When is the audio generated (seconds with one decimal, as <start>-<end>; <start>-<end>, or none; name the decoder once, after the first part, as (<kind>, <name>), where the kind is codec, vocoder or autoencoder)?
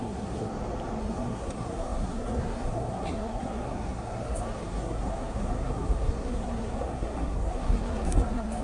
0.0-0.5 (codec, SNAC); 1.0-8.6